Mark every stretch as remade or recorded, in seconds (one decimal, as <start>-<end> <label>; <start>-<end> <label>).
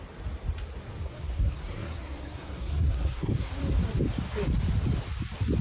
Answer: 0.0-1.0 recorded; 1.0-3.5 remade; 3.5-5.6 recorded